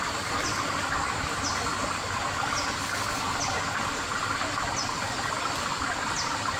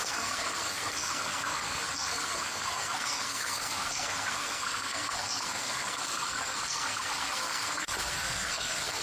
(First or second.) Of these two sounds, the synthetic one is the second